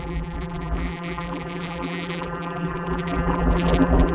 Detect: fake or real fake